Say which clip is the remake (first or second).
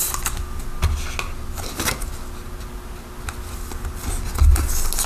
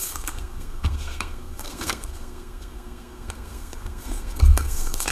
second